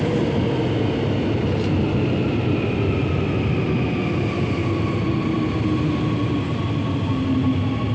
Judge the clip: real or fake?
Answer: real